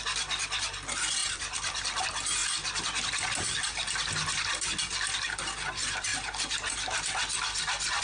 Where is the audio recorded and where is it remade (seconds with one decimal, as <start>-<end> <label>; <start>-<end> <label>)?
0.0-1.2 recorded; 1.2-2.0 remade; 2.0-8.0 recorded